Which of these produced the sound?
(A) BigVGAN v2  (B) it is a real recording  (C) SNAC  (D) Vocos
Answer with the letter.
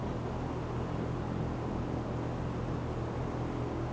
B